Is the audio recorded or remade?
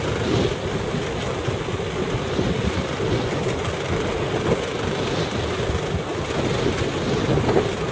recorded